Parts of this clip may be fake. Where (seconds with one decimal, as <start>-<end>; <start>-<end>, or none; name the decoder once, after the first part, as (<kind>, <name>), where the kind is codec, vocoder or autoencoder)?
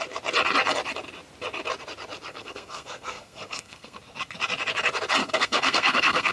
2.3-4.0 (codec, SNAC); 5.2-6.3